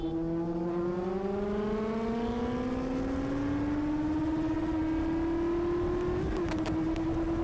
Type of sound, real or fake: real